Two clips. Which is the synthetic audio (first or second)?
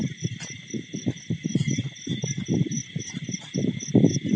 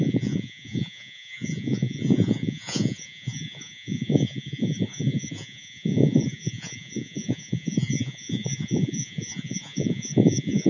second